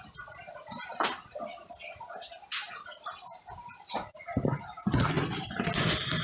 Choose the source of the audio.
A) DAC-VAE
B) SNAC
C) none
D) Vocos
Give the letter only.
C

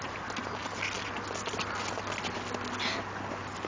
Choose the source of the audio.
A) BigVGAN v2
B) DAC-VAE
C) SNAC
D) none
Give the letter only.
D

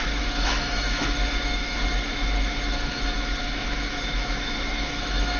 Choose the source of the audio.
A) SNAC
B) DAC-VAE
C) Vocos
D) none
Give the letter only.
B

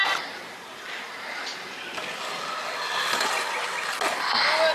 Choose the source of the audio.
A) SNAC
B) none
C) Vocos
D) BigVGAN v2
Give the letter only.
B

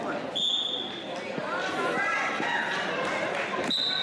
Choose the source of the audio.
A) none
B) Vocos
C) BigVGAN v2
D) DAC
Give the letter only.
C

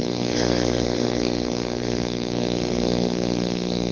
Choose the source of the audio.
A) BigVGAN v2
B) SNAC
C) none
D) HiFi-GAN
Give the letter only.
B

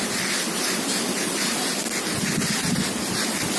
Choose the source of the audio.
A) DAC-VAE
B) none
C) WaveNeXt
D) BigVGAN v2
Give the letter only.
B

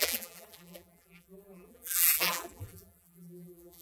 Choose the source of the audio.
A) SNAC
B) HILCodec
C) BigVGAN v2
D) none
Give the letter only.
C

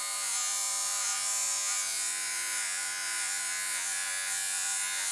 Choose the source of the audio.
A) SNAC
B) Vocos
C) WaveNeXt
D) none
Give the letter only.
B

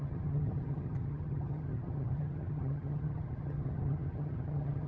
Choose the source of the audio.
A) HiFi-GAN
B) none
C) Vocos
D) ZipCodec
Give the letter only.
A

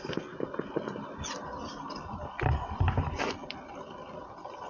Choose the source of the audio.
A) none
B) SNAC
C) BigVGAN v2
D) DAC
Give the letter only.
A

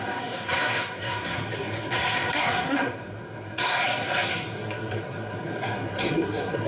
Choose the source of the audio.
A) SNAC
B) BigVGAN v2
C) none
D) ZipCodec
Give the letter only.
A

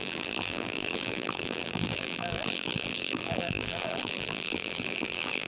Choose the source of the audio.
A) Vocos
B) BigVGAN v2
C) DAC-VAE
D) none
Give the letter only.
B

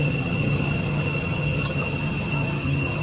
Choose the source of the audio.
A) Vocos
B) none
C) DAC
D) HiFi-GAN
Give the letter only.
D